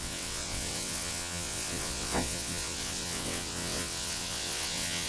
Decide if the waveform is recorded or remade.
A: remade